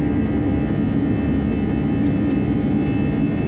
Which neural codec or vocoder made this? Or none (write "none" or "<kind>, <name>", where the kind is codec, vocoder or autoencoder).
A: none